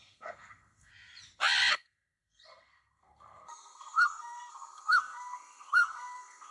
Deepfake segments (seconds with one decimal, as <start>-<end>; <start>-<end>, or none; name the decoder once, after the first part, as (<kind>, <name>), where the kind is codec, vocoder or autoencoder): 0.0-0.9 (codec, SNAC); 1.7-6.5